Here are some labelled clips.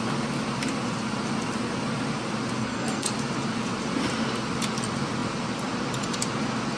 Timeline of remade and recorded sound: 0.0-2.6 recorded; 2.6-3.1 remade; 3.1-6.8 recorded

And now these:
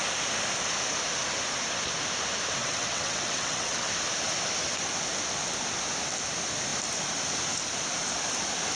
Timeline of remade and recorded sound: 0.0-2.6 recorded; 2.6-3.9 remade; 3.9-8.8 recorded

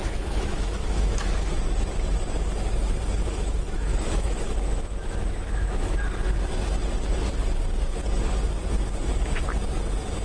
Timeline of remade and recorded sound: 0.0-1.5 remade; 1.5-3.2 recorded; 3.2-6.1 remade; 6.1-10.2 recorded

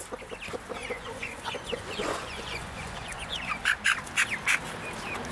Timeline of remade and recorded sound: 0.0-0.8 recorded; 0.8-3.6 remade; 3.6-5.3 recorded